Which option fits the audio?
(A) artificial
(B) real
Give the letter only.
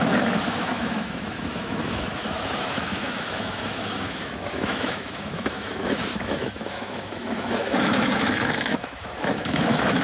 A